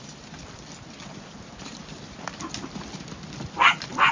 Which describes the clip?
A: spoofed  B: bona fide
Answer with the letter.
B